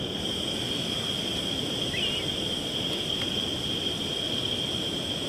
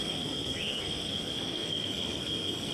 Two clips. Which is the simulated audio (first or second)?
second